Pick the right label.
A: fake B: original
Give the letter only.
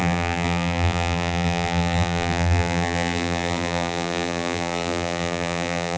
A